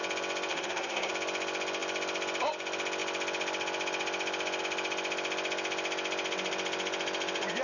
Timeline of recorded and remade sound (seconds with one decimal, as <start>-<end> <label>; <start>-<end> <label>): 0.0-0.5 recorded; 0.5-1.1 remade; 1.1-7.6 recorded